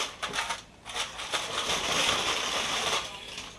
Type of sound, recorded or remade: remade